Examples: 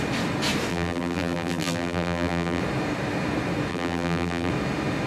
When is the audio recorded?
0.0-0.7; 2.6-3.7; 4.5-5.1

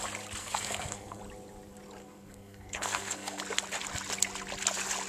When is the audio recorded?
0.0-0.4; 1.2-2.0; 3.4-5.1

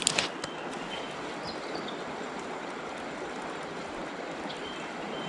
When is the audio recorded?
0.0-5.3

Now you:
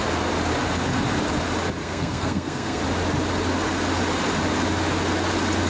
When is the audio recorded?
0.0-1.8; 2.8-5.7